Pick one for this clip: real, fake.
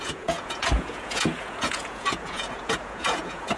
fake